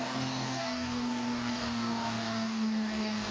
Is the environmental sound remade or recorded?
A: remade